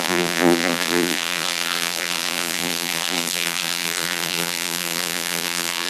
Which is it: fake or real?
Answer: fake